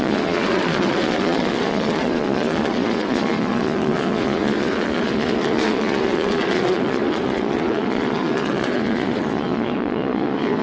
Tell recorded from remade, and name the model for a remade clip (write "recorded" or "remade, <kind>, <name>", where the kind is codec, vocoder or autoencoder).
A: remade, vocoder, Vocos